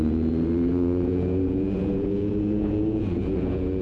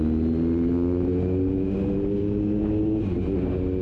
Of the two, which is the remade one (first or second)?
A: first